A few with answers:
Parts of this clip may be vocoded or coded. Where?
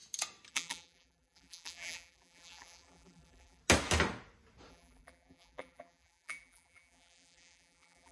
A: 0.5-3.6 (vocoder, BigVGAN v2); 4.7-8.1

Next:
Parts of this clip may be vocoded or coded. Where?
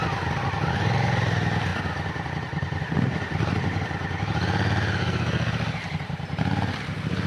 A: 5.0-5.5 (codec, SNAC)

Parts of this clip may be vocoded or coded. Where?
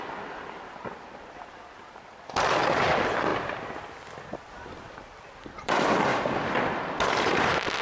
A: 0.0-3.3 (vocoder, BigVGAN v2); 4.5-6.1; 6.8-7.8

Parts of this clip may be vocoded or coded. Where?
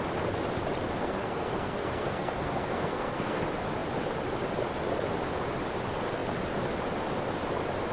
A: 1.0-3.4 (codec, SNAC)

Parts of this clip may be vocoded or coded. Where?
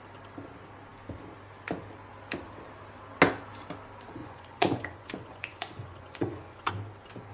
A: 4.2-6.7 (vocoder, Vocos)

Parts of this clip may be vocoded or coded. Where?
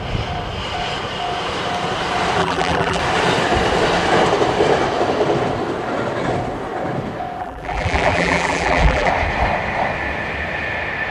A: 2.4-3.0 (vocoder, BigVGAN v2); 7.4-9.1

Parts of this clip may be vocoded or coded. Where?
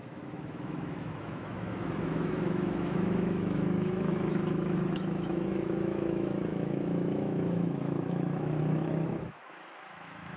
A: 0.0-10.4 (autoencoder, DAC-VAE)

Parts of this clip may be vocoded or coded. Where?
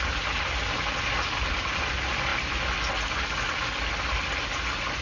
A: none